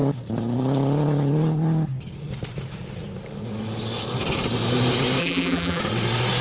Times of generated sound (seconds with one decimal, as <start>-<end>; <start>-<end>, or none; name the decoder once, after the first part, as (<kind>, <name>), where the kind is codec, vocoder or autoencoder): 5.2-5.8 (vocoder, BigVGAN v2)